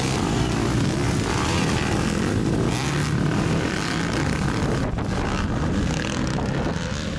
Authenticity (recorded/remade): recorded